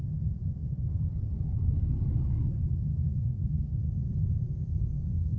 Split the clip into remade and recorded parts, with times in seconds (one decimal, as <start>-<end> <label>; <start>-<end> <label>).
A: 0.0-3.1 recorded; 3.1-3.7 remade; 3.7-4.7 recorded; 4.7-5.4 remade